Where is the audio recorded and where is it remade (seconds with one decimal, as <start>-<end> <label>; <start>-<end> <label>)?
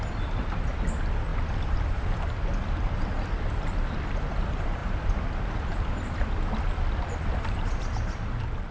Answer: 0.0-8.7 recorded